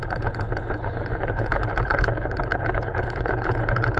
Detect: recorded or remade remade